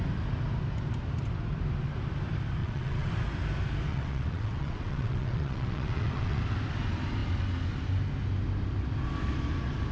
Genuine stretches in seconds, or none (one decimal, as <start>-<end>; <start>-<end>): 0.0-2.6; 3.1-3.9; 6.4-9.9